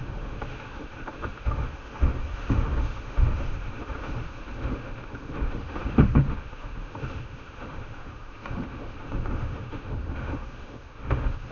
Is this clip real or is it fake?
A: fake